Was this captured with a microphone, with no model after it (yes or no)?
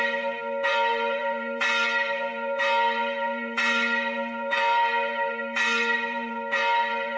no